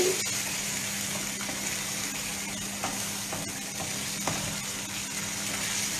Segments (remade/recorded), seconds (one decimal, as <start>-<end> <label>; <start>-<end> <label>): 0.0-6.0 recorded